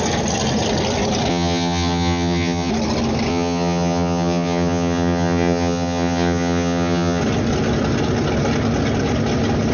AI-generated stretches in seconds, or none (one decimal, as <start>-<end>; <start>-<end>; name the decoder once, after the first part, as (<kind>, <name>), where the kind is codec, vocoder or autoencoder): 1.3-2.7 (vocoder, HiFi-GAN); 3.3-7.2